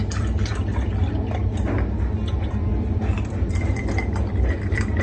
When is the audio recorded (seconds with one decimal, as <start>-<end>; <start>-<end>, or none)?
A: 0.5-2.4